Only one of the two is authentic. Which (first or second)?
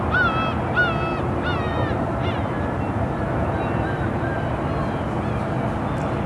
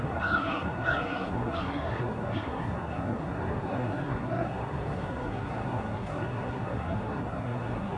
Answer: first